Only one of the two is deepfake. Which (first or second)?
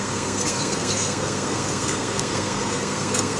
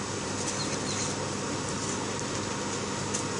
first